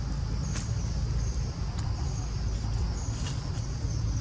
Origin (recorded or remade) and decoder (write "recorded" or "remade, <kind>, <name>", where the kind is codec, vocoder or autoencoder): recorded